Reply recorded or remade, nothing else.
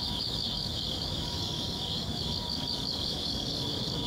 remade